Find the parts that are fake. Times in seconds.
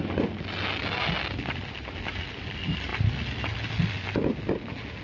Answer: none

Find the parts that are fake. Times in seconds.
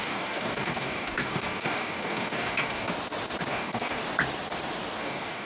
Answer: 0.0-2.9 (codec, DAC); 3.5-4.0; 5.0-5.5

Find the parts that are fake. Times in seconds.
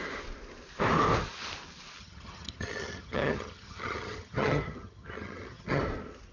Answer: 2.0-5.8 (vocoder, HiFi-GAN)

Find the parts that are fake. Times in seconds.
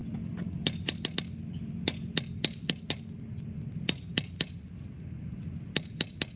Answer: none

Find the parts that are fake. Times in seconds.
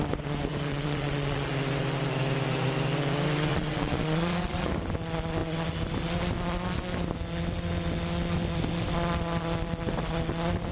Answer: 0.7-1.5 (vocoder, Vocos); 3.5-4.7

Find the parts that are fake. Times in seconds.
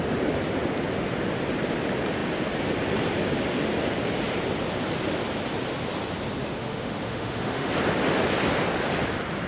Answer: 6.4-7.7 (autoencoder, DAC-VAE)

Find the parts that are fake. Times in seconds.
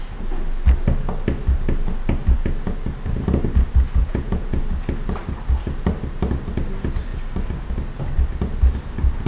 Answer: 4.0-4.6 (vocoder, Vocos)